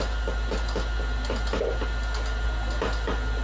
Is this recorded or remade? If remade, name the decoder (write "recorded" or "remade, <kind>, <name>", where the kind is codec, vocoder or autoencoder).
recorded